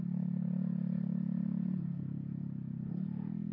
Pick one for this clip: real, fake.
real